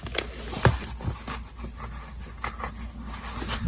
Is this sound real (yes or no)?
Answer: yes